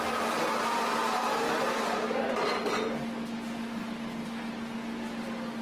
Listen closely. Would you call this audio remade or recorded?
recorded